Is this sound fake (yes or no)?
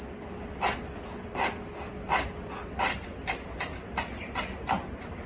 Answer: no